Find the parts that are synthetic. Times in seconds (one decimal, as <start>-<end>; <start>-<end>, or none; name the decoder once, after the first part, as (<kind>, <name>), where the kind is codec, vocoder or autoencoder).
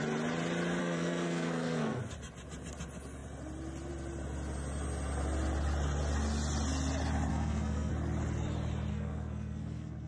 0.8-2.0 (codec, SNAC); 7.3-7.9; 8.9-10.1